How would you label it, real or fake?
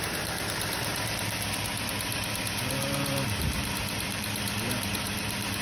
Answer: fake